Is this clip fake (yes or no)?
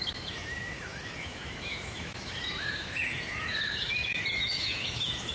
yes